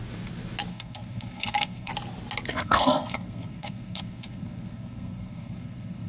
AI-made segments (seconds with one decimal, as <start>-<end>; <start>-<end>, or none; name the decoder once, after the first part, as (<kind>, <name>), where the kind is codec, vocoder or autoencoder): 0.7-1.9 (codec, SNAC); 2.5-6.1